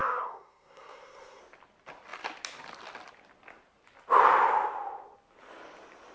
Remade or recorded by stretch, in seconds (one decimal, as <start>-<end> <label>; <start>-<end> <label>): 0.0-1.4 remade; 1.4-6.1 recorded